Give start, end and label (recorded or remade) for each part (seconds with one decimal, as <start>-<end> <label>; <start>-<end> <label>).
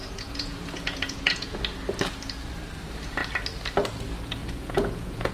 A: 0.0-1.6 remade; 1.6-4.4 recorded; 4.4-5.3 remade